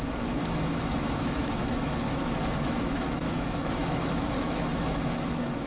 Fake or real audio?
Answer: fake